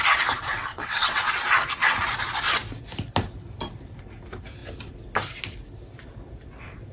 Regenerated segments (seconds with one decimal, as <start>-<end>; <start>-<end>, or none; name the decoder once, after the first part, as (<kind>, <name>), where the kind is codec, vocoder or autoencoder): 0.7-1.4 (vocoder, WaveNeXt)